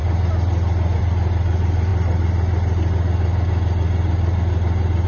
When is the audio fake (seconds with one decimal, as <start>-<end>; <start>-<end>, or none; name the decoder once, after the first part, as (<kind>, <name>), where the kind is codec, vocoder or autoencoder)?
none